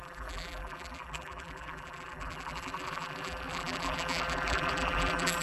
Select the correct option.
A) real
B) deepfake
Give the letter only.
B